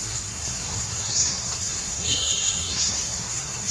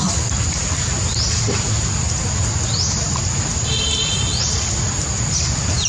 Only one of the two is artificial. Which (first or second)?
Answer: first